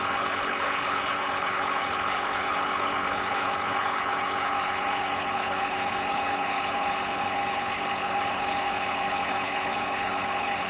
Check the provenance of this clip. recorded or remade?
remade